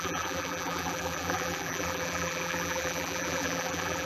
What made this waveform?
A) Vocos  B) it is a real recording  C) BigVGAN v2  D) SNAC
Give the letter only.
C